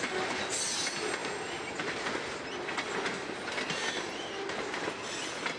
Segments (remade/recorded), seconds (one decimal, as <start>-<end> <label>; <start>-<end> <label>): 0.0-5.6 recorded